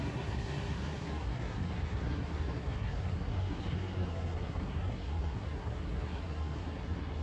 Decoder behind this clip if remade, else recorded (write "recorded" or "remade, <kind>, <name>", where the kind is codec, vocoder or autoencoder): remade, codec, SNAC